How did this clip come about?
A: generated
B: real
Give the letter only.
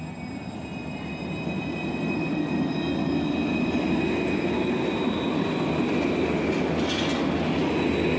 B